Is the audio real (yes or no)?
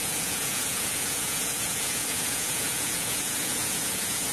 no